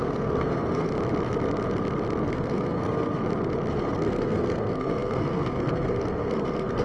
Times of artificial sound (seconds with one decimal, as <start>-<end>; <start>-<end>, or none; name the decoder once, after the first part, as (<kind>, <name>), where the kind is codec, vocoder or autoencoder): 0.0-0.9 (codec, SNAC); 2.3-3.2; 3.7-6.8